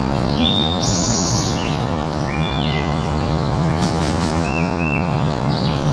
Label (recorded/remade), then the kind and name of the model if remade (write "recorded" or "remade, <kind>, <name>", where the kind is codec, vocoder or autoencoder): remade, vocoder, Vocos